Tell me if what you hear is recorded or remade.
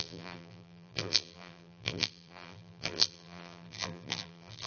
remade